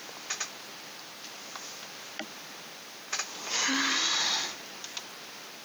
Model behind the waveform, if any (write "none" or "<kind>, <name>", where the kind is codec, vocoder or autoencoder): vocoder, BigVGAN v2